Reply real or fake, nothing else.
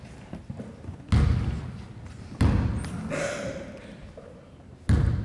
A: real